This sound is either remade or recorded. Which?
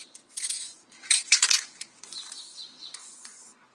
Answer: remade